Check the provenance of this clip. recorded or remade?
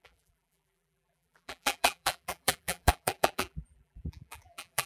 remade